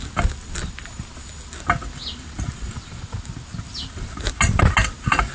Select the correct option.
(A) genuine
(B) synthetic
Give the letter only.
A